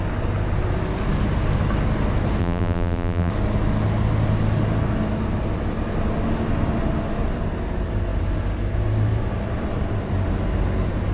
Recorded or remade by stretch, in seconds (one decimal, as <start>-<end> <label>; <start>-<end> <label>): 0.0-2.4 recorded; 2.4-3.3 remade; 3.3-11.1 recorded